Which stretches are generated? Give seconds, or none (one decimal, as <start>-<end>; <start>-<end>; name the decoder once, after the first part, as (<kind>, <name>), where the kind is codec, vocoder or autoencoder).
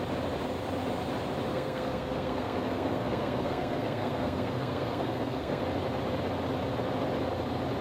1.5-5.6 (codec, SNAC)